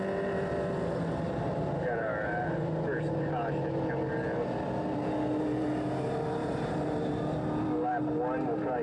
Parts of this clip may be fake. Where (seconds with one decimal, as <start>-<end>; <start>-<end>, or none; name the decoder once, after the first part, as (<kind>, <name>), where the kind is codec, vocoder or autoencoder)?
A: 6.4-7.2 (vocoder, BigVGAN v2)